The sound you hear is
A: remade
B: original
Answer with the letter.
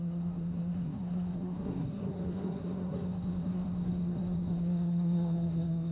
A